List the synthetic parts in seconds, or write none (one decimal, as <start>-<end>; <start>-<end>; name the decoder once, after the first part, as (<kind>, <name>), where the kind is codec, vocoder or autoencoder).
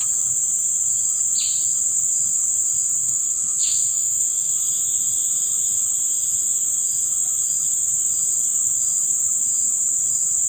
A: 3.0-4.5 (codec, SNAC)